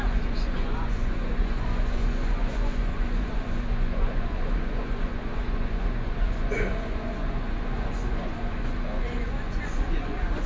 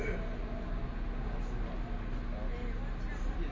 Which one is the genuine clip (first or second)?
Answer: second